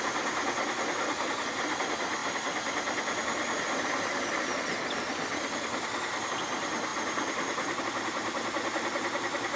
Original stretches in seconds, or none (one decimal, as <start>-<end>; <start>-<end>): 0.0-9.6

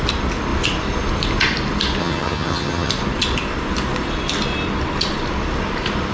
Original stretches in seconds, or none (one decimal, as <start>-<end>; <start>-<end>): 0.0-2.0; 2.9-6.1

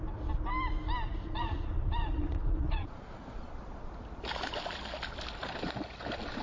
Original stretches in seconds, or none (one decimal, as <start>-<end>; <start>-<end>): 0.0-1.1; 3.9-6.4